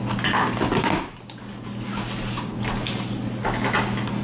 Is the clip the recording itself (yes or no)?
yes